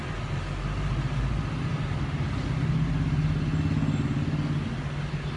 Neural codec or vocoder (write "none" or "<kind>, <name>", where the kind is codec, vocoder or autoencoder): none